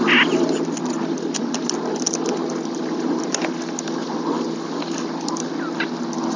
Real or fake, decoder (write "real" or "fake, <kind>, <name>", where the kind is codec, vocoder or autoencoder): real